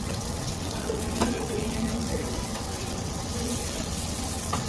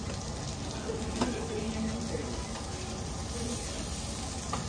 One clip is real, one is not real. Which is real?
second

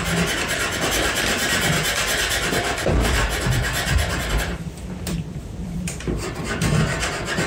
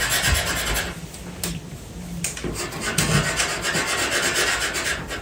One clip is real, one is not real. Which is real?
second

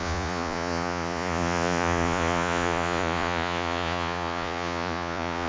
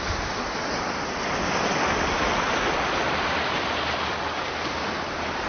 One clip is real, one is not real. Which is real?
second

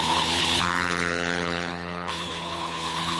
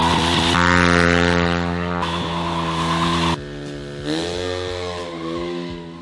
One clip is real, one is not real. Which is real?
second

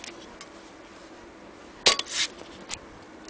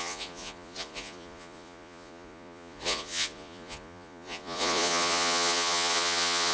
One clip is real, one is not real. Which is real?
first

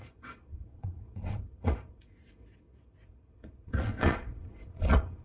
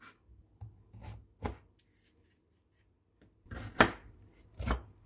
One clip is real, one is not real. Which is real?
second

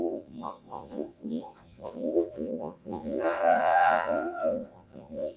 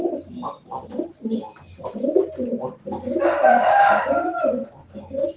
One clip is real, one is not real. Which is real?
second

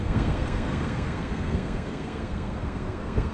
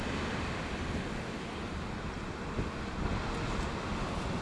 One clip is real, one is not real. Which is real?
second